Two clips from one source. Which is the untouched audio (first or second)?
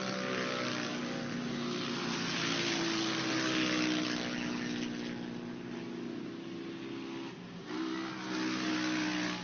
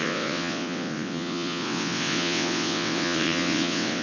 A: first